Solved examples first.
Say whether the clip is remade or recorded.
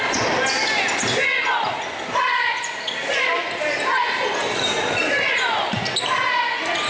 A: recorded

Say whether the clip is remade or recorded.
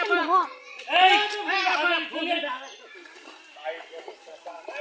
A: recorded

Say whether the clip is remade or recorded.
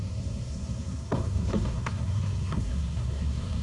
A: remade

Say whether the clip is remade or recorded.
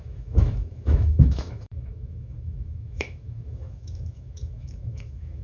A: remade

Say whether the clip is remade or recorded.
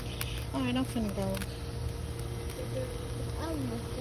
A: recorded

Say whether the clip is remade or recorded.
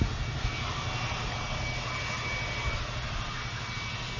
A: recorded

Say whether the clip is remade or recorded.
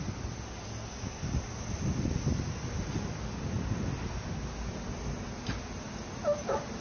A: recorded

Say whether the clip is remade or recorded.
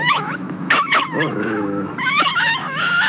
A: remade